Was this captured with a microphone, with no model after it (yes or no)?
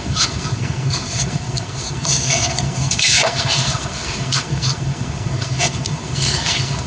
no